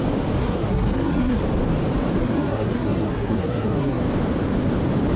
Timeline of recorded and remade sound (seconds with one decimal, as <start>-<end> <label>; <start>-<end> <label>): 0.0-0.4 recorded; 0.4-1.4 remade; 1.4-2.2 recorded; 2.2-4.0 remade; 4.0-5.2 recorded

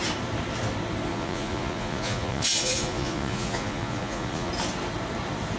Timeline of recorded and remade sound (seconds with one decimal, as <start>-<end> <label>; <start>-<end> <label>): 0.0-1.1 recorded; 1.1-4.5 remade; 4.5-5.6 recorded